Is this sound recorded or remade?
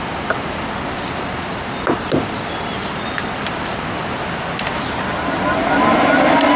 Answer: recorded